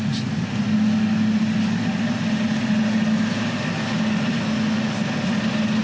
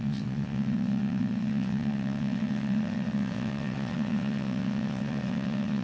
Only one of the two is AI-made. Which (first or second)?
second